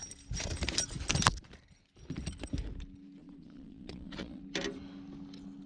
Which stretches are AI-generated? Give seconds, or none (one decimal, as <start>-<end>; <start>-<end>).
3.2-4.4